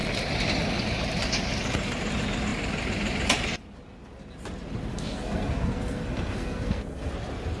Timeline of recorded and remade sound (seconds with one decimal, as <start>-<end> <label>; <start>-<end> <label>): 0.0-4.9 recorded; 4.9-7.1 remade; 7.1-7.6 recorded